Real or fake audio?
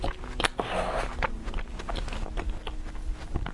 real